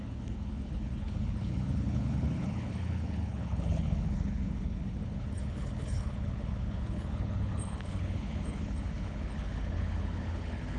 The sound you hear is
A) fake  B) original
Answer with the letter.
A